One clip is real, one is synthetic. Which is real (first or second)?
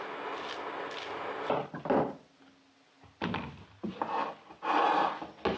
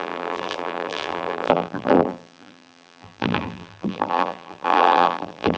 first